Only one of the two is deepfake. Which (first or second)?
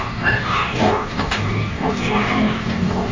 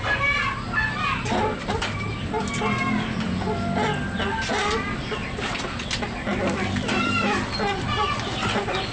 first